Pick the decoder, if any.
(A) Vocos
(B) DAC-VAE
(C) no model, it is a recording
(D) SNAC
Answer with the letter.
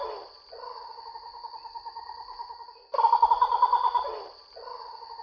C